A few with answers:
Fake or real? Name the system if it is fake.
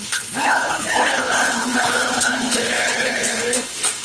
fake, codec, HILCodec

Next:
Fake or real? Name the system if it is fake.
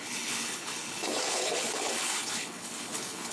fake, codec, HILCodec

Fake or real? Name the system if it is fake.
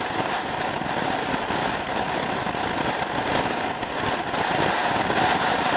real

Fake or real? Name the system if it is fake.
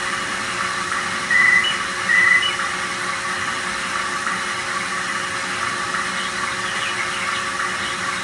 real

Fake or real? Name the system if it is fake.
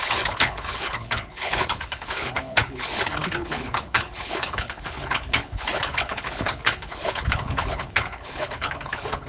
fake, codec, HILCodec